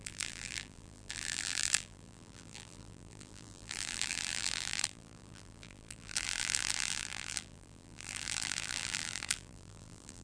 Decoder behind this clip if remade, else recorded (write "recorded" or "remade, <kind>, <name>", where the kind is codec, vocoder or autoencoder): remade, vocoder, BigVGAN v2